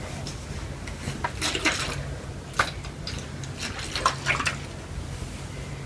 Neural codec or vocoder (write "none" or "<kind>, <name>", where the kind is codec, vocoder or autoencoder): none